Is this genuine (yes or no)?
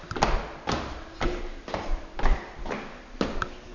yes